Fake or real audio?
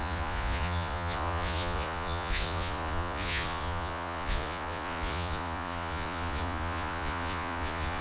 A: fake